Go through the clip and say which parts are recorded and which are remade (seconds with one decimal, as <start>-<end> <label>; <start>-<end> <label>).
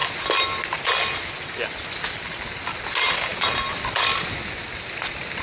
0.0-5.4 recorded